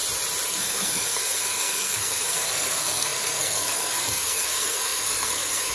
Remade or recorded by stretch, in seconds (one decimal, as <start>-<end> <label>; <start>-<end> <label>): 0.0-0.5 recorded; 0.5-5.7 remade